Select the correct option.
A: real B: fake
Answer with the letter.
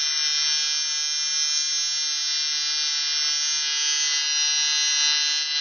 A